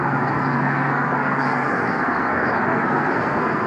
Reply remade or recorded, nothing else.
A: remade